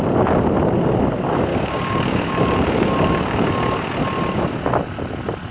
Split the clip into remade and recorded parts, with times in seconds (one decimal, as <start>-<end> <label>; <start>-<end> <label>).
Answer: 0.0-1.5 recorded; 1.5-3.9 remade; 3.9-5.5 recorded